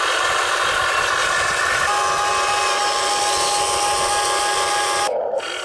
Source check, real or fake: real